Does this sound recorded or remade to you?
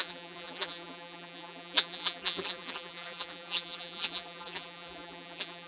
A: remade